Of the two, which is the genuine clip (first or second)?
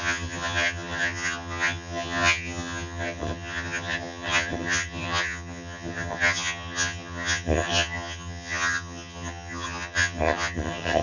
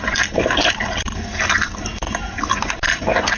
second